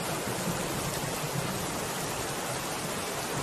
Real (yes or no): yes